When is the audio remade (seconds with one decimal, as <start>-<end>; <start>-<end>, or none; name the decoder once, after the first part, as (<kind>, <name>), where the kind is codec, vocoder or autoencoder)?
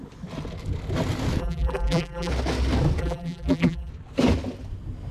1.4-2.3 (vocoder, BigVGAN v2); 3.0-3.9